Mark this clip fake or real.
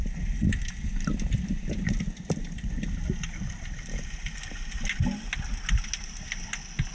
real